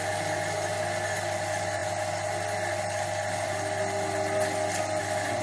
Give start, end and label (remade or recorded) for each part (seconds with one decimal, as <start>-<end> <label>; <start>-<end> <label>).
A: 0.0-5.4 recorded